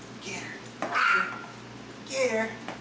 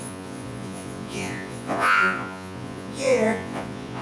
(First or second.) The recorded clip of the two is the first